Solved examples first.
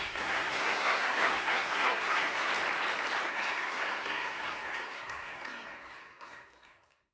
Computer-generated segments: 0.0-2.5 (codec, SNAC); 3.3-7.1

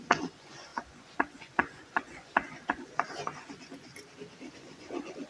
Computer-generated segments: 0.0-3.9 (vocoder, Vocos); 4.6-5.3

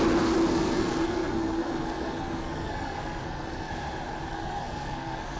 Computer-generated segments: 0.5-3.7 (codec, SNAC); 4.3-5.4

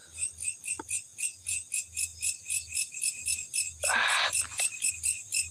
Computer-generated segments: 1.1-1.7 (vocoder, Vocos)

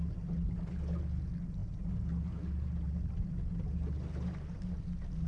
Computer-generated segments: none

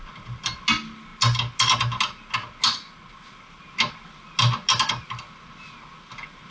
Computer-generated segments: none

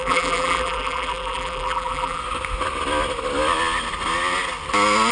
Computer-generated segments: 0.0-2.2 (vocoder, BigVGAN v2)